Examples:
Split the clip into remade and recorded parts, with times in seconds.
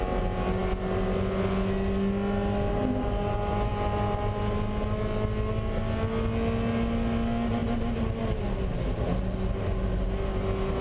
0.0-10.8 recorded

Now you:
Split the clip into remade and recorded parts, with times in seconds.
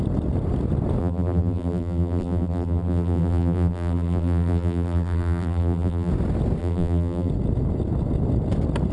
0.0-1.0 recorded; 1.0-6.1 remade; 6.1-6.6 recorded; 6.6-7.3 remade; 7.3-8.9 recorded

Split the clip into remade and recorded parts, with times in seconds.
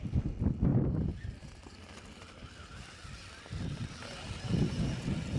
0.0-0.7 recorded; 0.7-3.9 remade; 3.9-5.4 recorded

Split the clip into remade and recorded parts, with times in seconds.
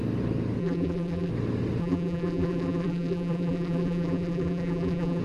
0.0-0.6 recorded; 0.6-1.3 remade; 1.3-1.8 recorded; 1.8-5.2 remade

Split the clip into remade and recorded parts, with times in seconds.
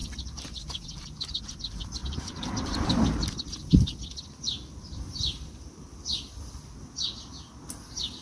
0.0-1.4 remade; 1.4-2.0 recorded; 2.0-3.0 remade; 3.0-5.1 recorded; 5.1-5.8 remade; 5.8-8.2 recorded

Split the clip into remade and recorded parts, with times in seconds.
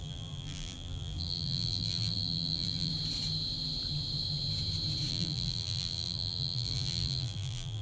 0.0-2.9 remade; 2.9-5.1 recorded; 5.1-7.8 remade